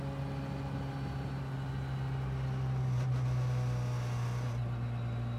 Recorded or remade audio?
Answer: recorded